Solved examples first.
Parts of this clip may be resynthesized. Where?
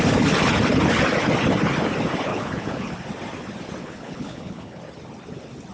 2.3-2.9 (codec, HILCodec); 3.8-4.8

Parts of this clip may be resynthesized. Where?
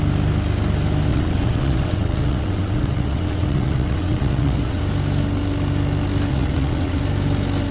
1.1-4.8 (vocoder, WaveNeXt); 6.3-7.0